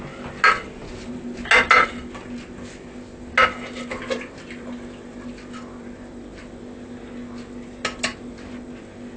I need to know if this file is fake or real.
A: real